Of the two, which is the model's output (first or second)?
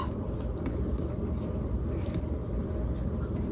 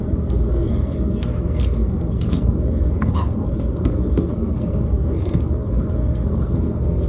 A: second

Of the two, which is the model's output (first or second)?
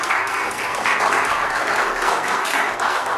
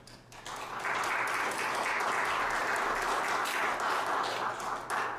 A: first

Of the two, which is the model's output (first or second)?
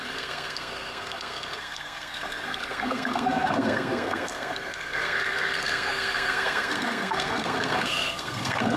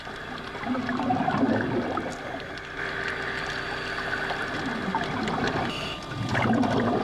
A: first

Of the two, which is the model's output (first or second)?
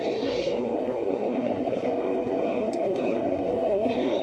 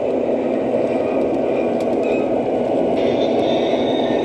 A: first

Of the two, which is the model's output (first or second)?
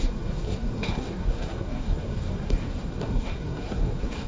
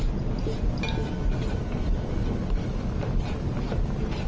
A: first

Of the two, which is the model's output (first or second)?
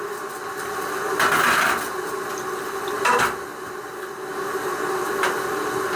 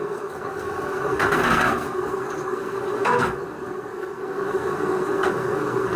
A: second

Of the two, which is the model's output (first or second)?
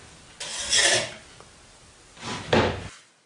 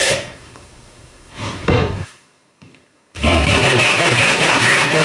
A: second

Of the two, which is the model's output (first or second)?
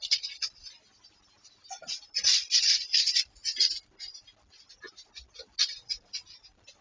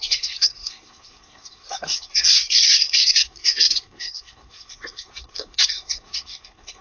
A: second